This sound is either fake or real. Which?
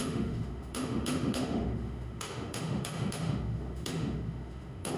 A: fake